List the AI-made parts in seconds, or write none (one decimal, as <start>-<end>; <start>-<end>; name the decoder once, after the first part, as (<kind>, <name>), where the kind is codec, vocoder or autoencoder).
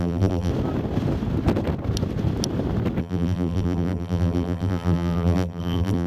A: 0.0-0.5 (vocoder, BigVGAN v2); 3.0-6.1